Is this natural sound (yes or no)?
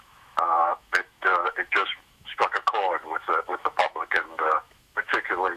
no